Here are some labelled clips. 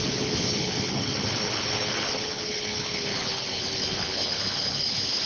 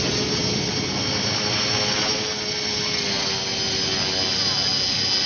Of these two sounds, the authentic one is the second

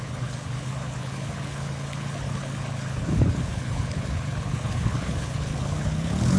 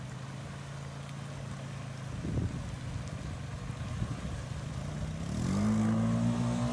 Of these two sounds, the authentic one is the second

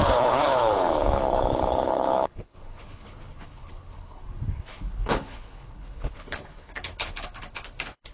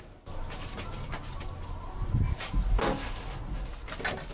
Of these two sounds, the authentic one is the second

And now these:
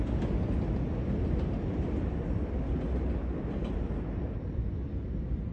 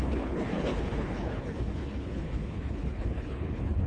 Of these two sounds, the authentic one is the first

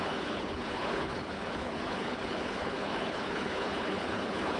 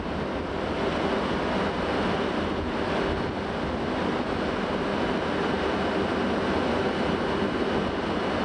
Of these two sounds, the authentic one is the second